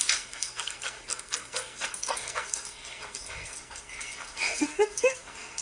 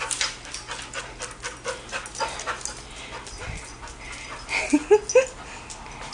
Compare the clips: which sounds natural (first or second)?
second